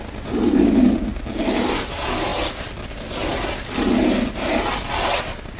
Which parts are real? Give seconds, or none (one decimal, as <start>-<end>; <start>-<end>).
0.0-5.6